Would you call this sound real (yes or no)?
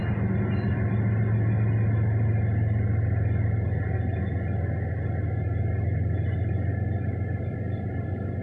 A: yes